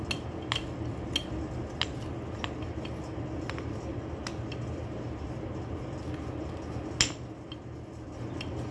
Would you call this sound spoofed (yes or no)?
no